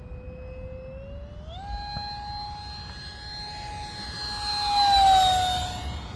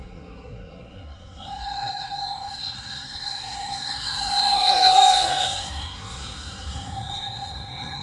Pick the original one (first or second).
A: first